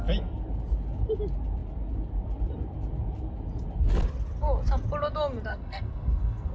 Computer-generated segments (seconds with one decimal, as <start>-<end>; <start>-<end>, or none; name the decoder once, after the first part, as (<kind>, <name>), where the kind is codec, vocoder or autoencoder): 5.5-6.5 (codec, SNAC)

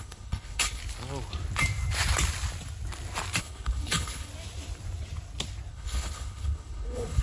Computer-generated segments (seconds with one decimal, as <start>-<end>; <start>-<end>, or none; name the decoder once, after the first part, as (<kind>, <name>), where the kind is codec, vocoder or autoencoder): 0.0-0.8 (codec, HILCodec); 3.4-4.3; 5.7-7.2

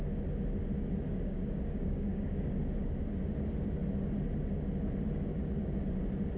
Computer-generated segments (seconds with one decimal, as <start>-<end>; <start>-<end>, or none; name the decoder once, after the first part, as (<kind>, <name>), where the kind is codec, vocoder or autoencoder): 1.1-2.6 (codec, DAC); 5.3-5.8